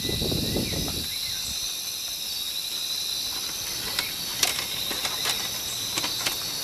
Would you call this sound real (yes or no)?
yes